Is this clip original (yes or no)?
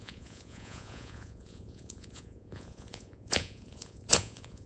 no